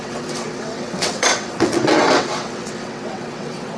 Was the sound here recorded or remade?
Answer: remade